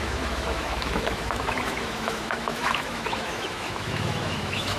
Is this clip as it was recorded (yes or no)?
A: no